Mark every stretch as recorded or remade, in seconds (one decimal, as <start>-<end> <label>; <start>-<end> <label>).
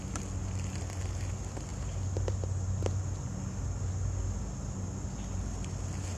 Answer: 0.0-6.2 recorded